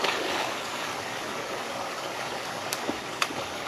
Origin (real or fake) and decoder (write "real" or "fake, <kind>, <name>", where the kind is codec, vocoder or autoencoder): fake, codec, DAC